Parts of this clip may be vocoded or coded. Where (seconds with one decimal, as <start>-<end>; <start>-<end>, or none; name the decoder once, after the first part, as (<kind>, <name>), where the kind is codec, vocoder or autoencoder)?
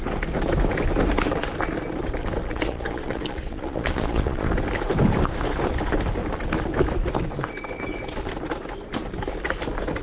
2.4-4.5 (vocoder, Vocos)